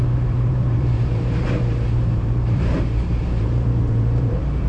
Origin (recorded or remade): remade